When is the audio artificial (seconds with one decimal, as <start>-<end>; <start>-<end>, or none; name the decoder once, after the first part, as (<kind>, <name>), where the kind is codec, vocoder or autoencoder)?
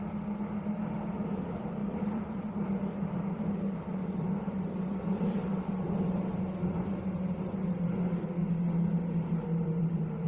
1.8-2.5 (vocoder, BigVGAN v2); 3.9-7.0